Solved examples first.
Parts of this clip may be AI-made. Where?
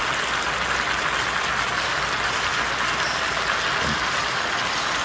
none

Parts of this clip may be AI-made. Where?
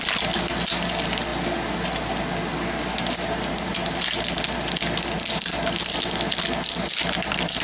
none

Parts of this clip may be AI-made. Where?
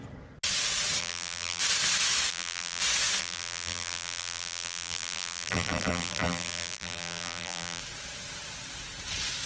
1.0-1.6 (vocoder, BigVGAN v2); 2.3-2.8; 3.2-7.8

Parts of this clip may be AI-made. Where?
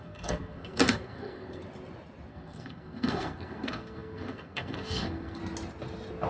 0.0-1.6 (codec, SNAC); 2.3-5.4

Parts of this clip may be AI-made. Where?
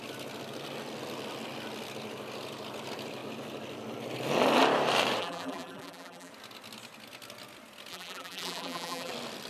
5.2-6.3 (vocoder, BigVGAN v2); 7.9-9.1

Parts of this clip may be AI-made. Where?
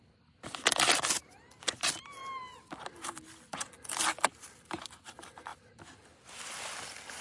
none